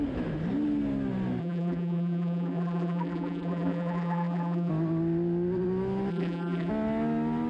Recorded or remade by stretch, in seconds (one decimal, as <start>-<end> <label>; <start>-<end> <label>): 0.0-1.4 recorded; 1.4-4.7 remade; 4.7-6.1 recorded; 6.1-6.7 remade; 6.7-7.5 recorded